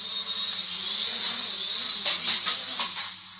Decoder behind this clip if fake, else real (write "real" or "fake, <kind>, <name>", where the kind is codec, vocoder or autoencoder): real